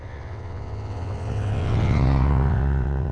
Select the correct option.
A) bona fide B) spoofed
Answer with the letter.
B